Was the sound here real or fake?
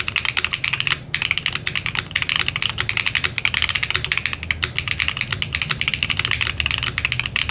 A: real